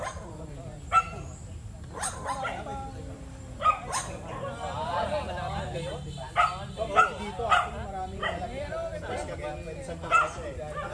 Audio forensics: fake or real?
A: real